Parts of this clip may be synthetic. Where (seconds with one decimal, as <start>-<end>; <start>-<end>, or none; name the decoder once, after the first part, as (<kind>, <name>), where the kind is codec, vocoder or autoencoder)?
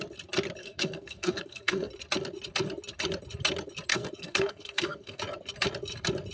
0.6-1.9 (codec, SNAC); 3.9-5.2